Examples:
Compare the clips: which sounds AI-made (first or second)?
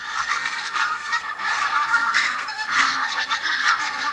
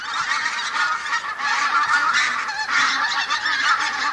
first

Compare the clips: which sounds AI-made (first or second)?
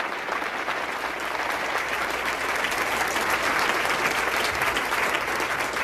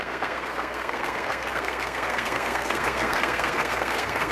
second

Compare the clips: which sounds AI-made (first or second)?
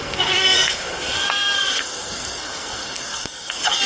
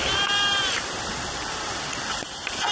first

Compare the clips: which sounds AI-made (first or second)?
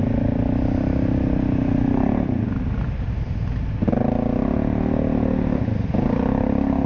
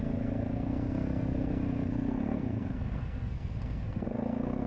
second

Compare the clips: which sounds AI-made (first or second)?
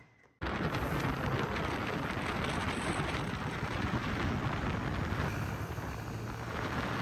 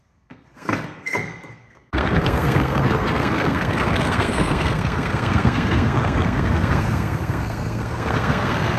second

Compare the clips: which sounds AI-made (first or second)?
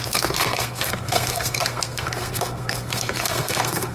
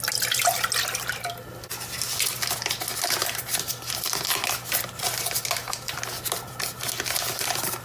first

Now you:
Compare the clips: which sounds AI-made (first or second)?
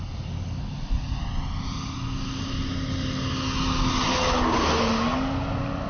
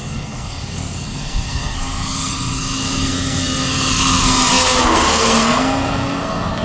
second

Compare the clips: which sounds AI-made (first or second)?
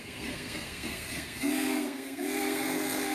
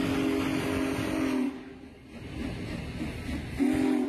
first